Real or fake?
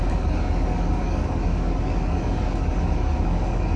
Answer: fake